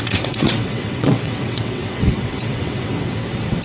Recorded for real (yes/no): no